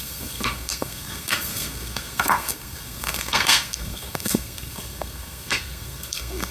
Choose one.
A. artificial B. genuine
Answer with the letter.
A